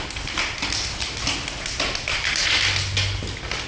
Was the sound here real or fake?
real